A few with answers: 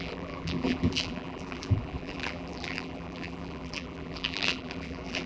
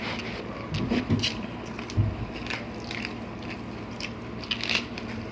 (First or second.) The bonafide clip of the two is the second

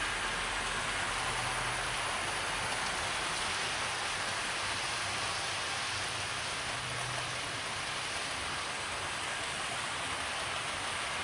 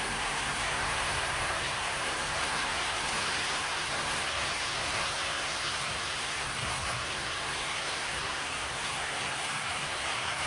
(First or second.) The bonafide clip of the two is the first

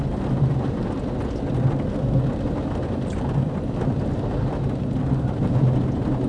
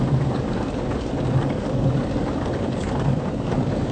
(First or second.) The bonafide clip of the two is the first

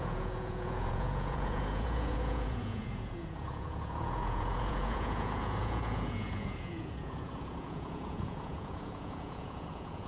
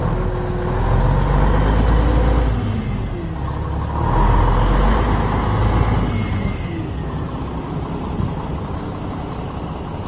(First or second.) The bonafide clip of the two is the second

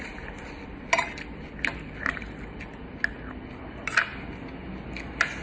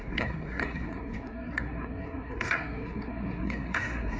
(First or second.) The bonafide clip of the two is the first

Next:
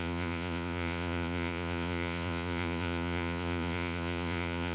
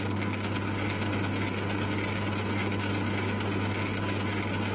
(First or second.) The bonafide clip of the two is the second